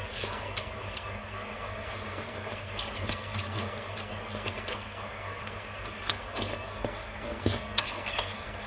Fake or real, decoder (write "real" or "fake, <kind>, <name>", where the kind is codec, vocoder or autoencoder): fake, codec, SNAC